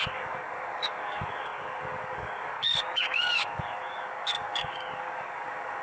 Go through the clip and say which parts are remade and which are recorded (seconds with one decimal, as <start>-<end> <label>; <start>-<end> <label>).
0.0-5.8 remade